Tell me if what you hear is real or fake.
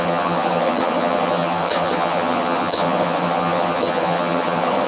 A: fake